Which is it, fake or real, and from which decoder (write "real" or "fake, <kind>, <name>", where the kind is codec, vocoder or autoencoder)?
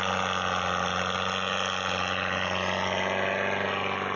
real